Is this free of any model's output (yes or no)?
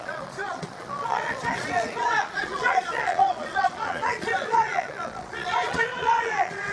no